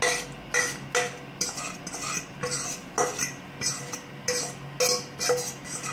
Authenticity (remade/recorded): recorded